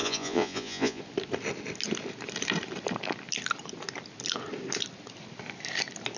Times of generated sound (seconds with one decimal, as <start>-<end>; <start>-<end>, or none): 0.0-1.0

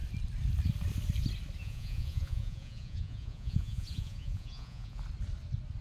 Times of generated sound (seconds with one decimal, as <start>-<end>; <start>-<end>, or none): 1.6-5.0

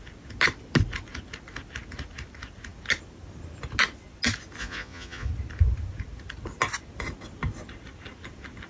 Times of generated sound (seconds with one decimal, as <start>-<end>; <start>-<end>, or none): 4.6-5.3

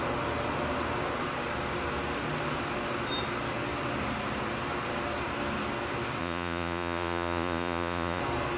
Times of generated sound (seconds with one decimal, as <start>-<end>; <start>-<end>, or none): 6.2-8.2

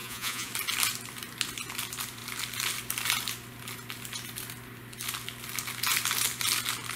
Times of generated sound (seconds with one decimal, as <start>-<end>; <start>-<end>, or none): 0.0-0.5

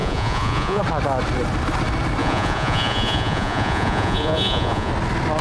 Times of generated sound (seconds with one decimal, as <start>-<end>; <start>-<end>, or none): 0.0-0.8; 2.2-4.9

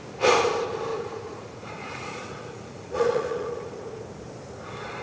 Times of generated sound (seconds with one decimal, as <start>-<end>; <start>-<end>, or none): 0.9-3.9

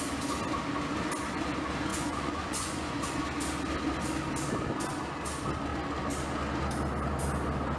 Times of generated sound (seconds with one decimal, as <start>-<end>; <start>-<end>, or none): 1.9-3.1